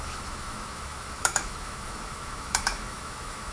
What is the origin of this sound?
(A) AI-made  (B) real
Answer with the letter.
A